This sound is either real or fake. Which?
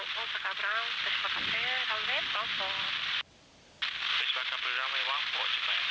real